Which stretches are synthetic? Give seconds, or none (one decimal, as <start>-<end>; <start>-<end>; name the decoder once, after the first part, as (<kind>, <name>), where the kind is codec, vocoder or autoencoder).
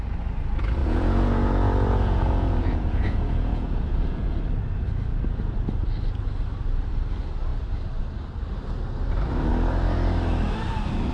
0.8-4.4 (vocoder, Vocos)